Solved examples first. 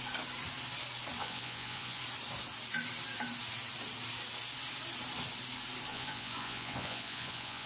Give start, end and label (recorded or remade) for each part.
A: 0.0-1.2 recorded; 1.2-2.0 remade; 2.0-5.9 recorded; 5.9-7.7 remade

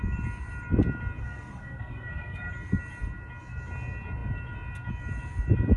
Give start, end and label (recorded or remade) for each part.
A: 0.0-1.2 recorded; 1.2-2.5 remade; 2.5-5.8 recorded

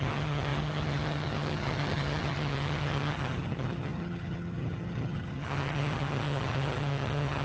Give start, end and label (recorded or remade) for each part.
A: 0.0-7.4 remade

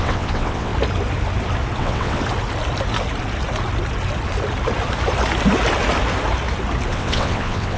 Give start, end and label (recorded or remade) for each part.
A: 0.0-0.7 remade; 0.7-1.8 recorded; 1.8-2.2 remade; 2.2-6.9 recorded; 6.9-7.8 remade

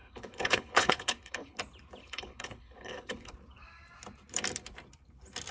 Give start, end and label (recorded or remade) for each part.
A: 0.0-1.6 remade; 1.6-2.0 recorded; 2.0-3.3 remade; 3.3-5.5 recorded

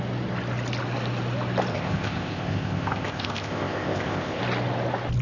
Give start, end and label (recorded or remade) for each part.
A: 0.0-1.7 recorded; 1.7-4.4 remade; 4.4-5.2 recorded